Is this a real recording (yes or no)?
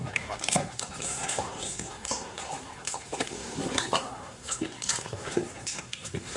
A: no